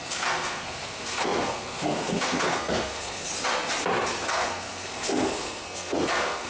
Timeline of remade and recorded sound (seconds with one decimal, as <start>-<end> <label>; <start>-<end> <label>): 0.0-3.3 remade; 3.3-4.3 recorded; 4.3-6.5 remade